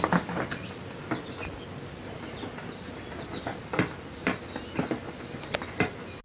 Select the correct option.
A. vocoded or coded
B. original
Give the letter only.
B